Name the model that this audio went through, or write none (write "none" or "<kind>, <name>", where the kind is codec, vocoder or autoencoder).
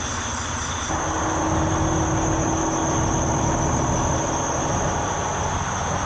none